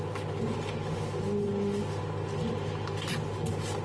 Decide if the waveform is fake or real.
real